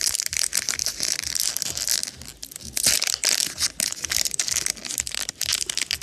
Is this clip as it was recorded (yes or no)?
yes